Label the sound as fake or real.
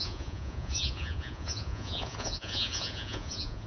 fake